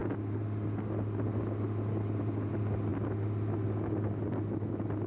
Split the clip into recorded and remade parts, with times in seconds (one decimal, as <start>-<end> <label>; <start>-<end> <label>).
0.0-5.1 recorded